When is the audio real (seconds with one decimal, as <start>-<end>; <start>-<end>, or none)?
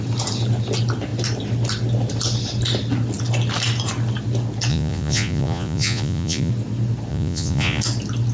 0.0-4.7; 6.5-7.1; 7.8-8.3